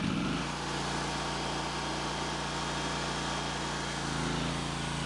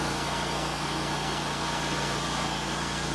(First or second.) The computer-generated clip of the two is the second